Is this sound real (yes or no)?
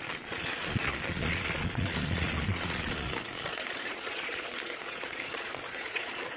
no